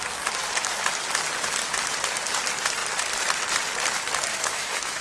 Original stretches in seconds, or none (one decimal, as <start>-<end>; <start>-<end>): 0.0-4.3